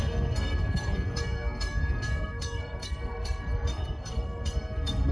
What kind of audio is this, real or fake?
fake